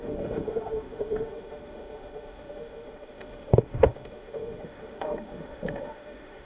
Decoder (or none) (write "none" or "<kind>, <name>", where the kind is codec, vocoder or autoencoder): autoencoder, DAC-VAE